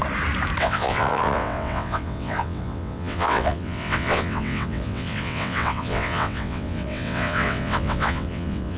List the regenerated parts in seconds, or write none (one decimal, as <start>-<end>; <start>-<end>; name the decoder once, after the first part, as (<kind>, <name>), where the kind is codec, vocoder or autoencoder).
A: 0.6-8.8 (vocoder, WaveNeXt)